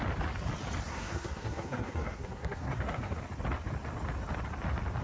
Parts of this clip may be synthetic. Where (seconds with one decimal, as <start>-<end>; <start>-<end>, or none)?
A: 0.9-3.2